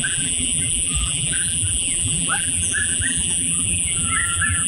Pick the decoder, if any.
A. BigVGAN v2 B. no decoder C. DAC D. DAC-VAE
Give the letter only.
A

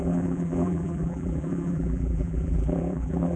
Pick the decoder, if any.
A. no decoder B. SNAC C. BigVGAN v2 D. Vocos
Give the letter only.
C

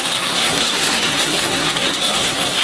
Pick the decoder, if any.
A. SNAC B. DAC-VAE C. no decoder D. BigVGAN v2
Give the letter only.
A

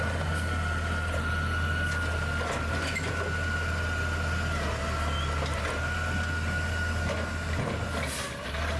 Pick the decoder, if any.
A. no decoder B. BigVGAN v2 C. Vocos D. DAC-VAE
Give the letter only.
A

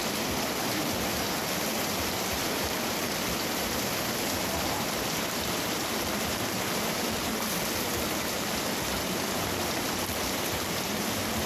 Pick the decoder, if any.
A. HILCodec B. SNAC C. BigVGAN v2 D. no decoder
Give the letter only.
C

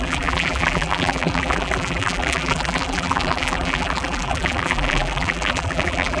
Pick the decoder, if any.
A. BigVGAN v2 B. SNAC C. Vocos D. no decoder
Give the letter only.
A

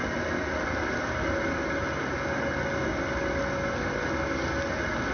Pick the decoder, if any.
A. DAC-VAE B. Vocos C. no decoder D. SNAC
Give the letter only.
C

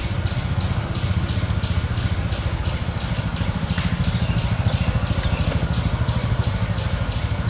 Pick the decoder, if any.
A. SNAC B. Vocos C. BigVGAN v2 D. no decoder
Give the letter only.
D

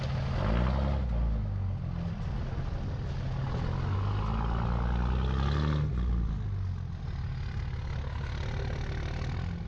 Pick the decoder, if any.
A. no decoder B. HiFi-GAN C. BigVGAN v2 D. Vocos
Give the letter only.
A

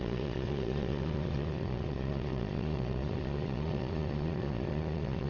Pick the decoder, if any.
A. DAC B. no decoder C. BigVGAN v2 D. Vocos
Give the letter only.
D